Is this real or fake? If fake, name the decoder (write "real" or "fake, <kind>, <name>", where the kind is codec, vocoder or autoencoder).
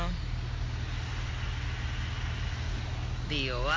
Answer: real